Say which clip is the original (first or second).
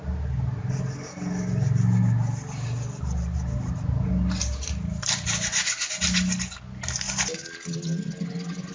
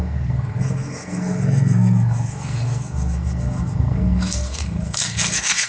first